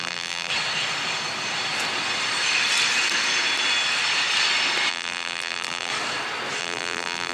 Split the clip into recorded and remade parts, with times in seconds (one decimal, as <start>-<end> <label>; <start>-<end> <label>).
0.0-0.5 remade; 0.5-4.9 recorded; 4.9-5.9 remade; 5.9-6.6 recorded; 6.6-7.3 remade